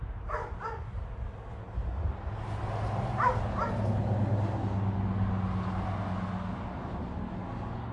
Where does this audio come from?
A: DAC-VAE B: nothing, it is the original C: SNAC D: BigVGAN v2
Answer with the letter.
B